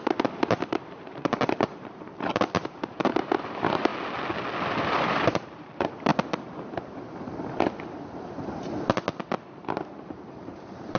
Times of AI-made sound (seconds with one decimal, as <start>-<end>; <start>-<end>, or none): 0.0-3.9; 4.7-6.1; 9.7-11.0